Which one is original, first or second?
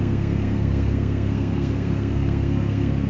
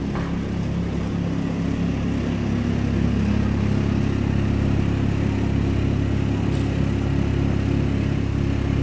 second